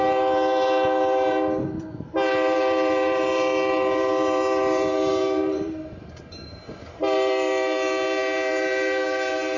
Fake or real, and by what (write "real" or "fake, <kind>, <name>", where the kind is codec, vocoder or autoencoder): fake, vocoder, BigVGAN v2